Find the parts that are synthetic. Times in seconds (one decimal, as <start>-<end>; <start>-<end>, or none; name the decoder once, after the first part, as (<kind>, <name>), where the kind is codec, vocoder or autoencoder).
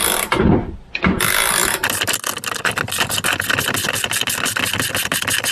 none